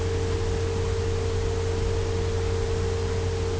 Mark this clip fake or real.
real